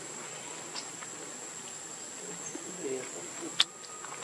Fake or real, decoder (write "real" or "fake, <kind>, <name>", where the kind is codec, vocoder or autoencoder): real